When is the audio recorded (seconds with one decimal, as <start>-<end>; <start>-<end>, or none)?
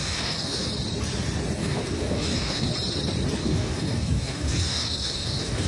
0.7-1.6; 2.7-3.4